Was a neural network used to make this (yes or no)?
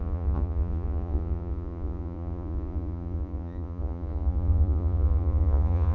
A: yes